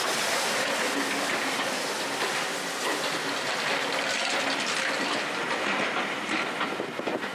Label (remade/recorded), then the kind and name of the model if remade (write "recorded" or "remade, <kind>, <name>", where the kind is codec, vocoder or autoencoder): recorded